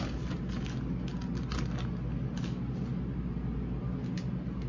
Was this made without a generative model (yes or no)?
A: yes